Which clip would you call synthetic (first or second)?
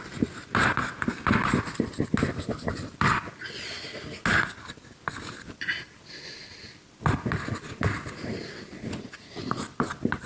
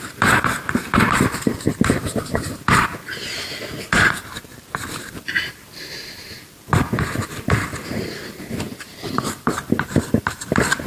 second